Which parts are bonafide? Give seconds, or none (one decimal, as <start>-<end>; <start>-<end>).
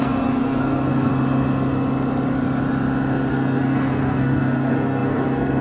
1.1-3.3